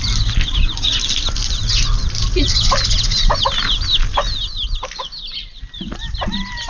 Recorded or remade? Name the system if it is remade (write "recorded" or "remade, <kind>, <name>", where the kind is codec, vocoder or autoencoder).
recorded